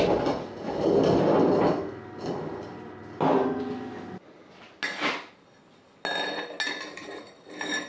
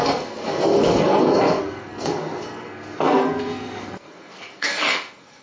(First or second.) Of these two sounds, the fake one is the second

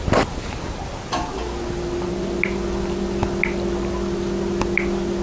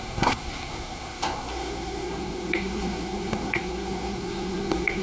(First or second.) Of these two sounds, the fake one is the second